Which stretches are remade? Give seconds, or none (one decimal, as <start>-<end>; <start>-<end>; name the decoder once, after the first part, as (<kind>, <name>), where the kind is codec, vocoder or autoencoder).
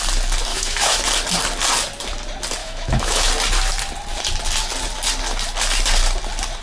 0.5-1.0 (autoencoder, DAC-VAE); 2.6-3.3